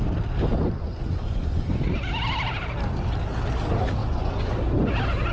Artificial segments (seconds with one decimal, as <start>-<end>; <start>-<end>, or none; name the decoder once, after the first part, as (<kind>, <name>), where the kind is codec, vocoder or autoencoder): 0.8-1.8 (vocoder, Vocos); 4.0-4.5